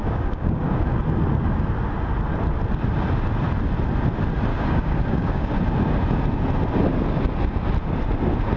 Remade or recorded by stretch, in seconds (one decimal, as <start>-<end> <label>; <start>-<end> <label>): 0.0-0.9 remade; 0.9-4.5 recorded; 4.5-5.5 remade; 5.5-8.6 recorded